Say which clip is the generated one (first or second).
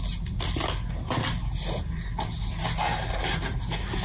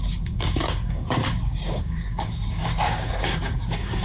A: second